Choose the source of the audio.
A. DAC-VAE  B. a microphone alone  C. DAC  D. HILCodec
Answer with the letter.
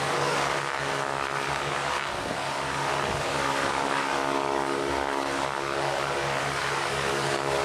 C